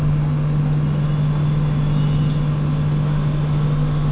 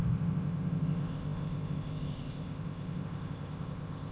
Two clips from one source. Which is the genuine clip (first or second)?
first